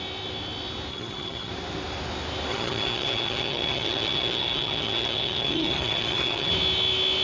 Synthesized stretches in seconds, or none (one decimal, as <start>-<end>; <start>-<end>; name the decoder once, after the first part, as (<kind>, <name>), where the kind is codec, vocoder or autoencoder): 0.9-1.5 (vocoder, HiFi-GAN); 2.5-6.5